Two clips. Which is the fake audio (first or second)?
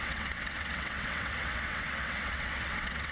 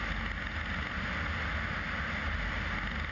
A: first